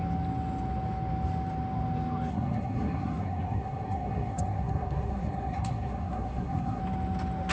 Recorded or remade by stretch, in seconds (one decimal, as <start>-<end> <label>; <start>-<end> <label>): 0.0-2.3 recorded; 2.3-6.8 remade; 6.8-7.5 recorded